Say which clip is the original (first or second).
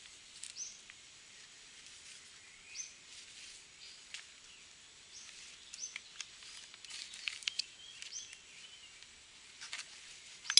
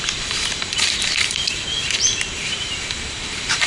first